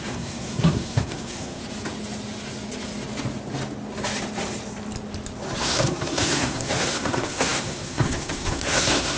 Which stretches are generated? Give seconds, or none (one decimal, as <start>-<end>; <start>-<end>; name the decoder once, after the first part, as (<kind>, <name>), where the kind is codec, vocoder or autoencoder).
0.0-1.6 (codec, SNAC); 5.6-9.2